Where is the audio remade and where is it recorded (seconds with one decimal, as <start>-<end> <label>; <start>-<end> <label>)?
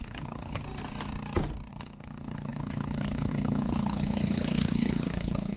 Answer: 0.0-0.6 remade; 0.6-1.7 recorded; 1.7-5.6 remade